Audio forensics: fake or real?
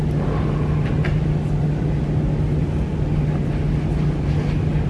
real